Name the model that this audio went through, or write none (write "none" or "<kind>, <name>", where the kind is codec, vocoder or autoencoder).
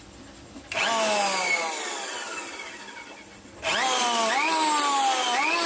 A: none